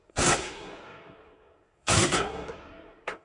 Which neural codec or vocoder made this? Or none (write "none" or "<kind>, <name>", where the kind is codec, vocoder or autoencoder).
codec, SNAC